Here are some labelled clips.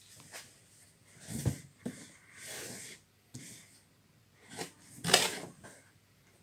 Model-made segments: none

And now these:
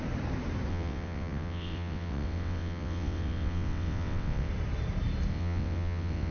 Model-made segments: 0.7-4.5 (vocoder, WaveNeXt); 5.3-6.3

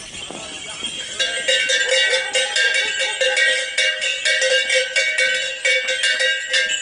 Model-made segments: none

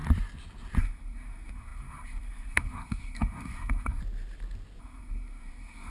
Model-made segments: 0.8-4.0 (codec, SNAC); 4.8-5.9

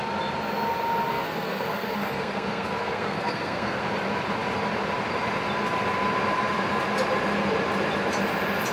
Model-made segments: 1.1-3.8 (codec, SNAC)

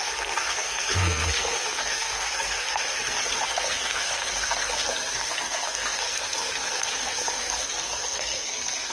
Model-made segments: 0.0-8.9 (codec, SNAC)

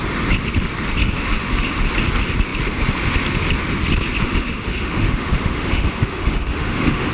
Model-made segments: 1.0-1.9 (autoencoder, DAC-VAE); 4.2-7.1